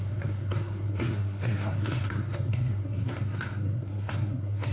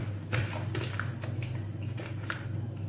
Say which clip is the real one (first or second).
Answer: second